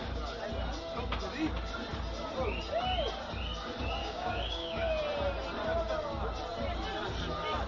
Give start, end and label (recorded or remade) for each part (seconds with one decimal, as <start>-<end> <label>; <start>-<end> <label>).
0.0-4.0 recorded; 4.0-5.0 remade; 5.0-7.7 recorded